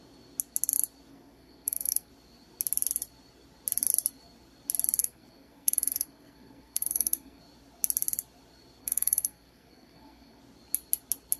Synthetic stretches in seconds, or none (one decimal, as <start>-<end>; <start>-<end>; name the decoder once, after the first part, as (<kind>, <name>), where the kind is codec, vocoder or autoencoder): 1.1-2.1 (codec, SNAC); 5.0-7.4; 8.8-10.4